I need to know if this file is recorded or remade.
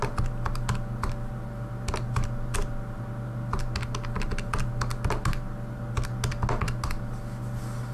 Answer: recorded